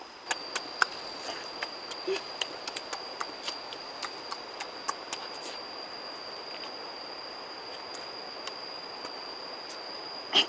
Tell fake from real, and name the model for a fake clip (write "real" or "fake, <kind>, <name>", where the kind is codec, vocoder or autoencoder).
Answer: real